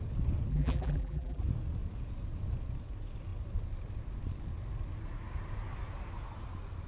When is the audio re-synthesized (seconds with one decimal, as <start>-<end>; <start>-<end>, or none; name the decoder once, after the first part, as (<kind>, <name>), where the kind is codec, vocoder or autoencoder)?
0.5-1.4 (vocoder, BigVGAN v2)